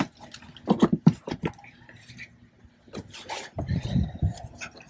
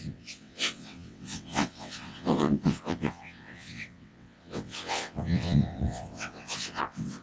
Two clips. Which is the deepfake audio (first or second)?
second